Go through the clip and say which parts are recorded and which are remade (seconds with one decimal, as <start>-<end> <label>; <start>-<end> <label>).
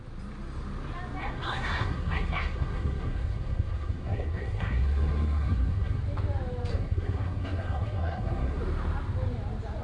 0.0-1.2 recorded; 1.2-6.0 remade; 6.0-6.7 recorded; 6.7-8.6 remade; 8.6-9.8 recorded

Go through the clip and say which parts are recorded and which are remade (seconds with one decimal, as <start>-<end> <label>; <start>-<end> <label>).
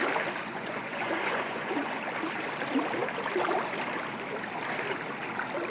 0.0-0.4 recorded; 0.4-2.0 remade; 2.0-5.7 recorded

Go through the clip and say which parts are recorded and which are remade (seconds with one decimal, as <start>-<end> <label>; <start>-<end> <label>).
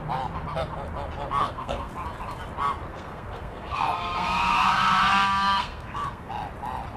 0.0-1.4 recorded; 1.4-1.9 remade; 1.9-2.9 recorded; 2.9-6.3 remade; 6.3-7.0 recorded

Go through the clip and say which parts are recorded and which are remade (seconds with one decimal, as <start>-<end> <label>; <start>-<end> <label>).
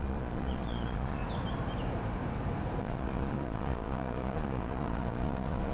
0.0-1.2 remade; 1.2-2.8 recorded; 2.8-5.7 remade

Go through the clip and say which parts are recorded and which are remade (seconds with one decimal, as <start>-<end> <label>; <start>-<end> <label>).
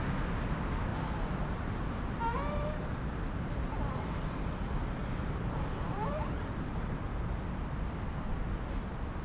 0.0-0.9 recorded; 0.9-2.2 remade; 2.2-5.0 recorded; 5.0-7.4 remade; 7.4-9.2 recorded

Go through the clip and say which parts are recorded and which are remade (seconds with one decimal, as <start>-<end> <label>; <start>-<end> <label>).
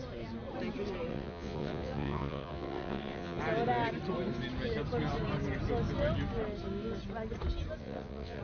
0.0-1.1 recorded; 1.1-3.4 remade; 3.4-7.8 recorded; 7.8-8.4 remade